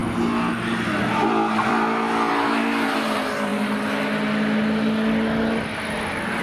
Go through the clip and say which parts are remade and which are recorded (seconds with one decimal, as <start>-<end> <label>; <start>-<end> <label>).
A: 0.0-6.4 recorded

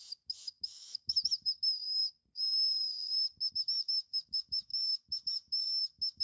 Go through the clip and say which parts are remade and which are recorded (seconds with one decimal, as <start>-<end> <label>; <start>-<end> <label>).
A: 0.0-2.0 remade; 2.0-3.5 recorded; 3.5-6.2 remade